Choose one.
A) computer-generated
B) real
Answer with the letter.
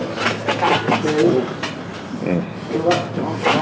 B